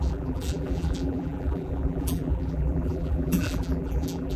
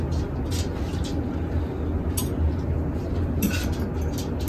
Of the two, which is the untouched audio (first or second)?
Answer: second